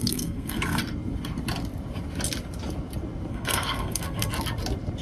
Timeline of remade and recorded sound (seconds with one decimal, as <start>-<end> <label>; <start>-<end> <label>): 0.0-0.8 remade; 0.8-3.3 recorded; 3.3-4.3 remade; 4.3-5.0 recorded